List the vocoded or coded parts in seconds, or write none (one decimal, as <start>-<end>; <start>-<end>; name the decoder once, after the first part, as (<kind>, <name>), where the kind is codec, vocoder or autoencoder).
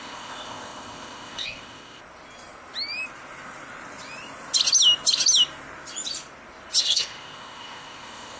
0.0-2.0 (codec, ZipCodec); 6.8-8.4